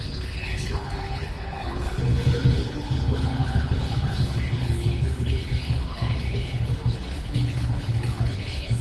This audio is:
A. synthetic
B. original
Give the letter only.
A